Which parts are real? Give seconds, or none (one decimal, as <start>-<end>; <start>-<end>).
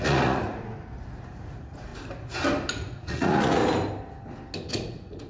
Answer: 0.7-1.2; 1.9-2.7; 3.6-4.7